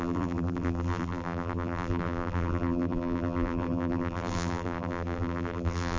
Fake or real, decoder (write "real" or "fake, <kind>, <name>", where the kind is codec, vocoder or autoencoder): fake, vocoder, BigVGAN v2